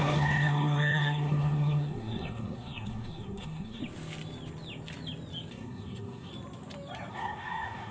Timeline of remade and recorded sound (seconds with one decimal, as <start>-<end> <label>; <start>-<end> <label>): 0.0-3.8 remade; 3.8-5.5 recorded; 5.5-6.3 remade; 6.3-7.1 recorded; 7.1-7.9 remade